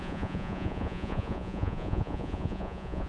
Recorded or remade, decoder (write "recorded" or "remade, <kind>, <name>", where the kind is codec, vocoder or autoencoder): remade, vocoder, Vocos